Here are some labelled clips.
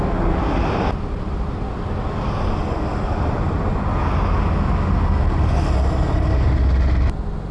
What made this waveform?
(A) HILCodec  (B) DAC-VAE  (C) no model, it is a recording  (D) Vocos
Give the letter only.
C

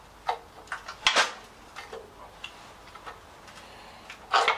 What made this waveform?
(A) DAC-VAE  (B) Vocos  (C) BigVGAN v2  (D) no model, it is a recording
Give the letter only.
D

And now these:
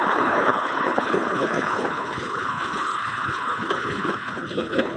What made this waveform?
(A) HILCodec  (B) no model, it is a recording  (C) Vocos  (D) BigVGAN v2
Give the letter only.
A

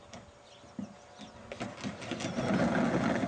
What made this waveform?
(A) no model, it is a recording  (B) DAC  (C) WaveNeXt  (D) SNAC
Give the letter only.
A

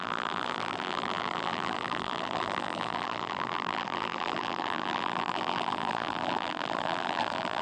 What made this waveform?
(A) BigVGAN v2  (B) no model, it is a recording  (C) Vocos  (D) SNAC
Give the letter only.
A